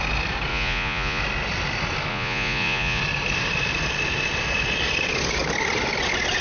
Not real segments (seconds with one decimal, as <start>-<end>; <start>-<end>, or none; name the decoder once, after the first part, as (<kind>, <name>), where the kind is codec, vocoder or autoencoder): 0.5-1.2 (vocoder, Vocos); 2.1-3.0